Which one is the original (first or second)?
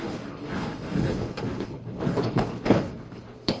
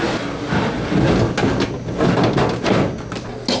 second